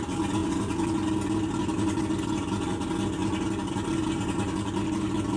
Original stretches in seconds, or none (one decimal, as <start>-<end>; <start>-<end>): 0.0-5.4